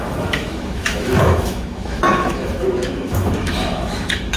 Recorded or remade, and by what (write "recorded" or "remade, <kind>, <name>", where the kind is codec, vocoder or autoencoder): remade, autoencoder, DAC-VAE